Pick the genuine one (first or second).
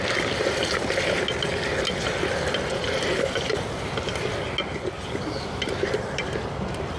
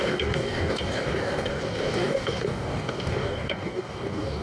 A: first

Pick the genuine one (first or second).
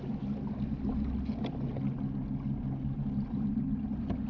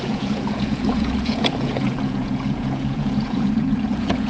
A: first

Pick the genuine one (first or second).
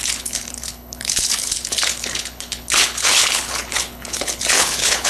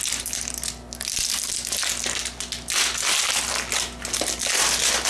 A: second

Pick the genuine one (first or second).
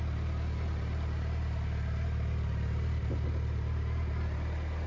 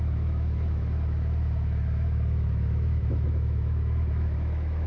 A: first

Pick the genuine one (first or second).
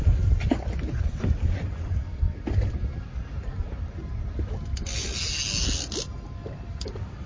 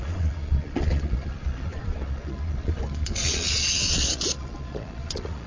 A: first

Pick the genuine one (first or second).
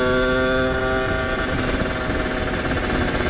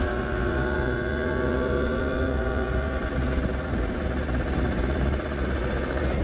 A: first